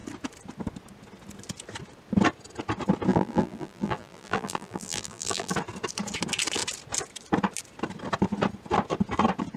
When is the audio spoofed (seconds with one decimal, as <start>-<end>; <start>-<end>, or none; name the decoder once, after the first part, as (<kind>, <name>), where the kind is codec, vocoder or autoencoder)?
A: 3.1-5.5 (vocoder, BigVGAN v2)